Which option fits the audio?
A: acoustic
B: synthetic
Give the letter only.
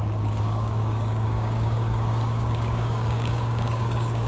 B